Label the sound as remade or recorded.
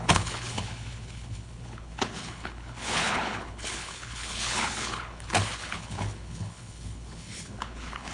remade